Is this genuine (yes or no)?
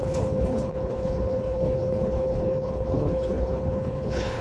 no